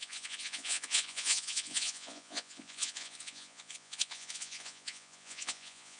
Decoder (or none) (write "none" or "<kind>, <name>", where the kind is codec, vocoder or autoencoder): vocoder, Vocos